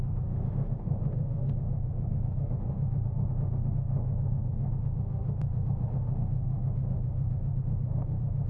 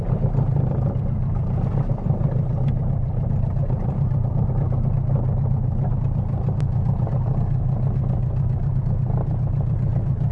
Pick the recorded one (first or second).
second